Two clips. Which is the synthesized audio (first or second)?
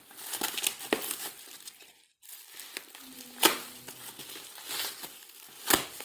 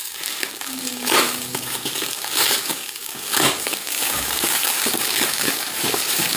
second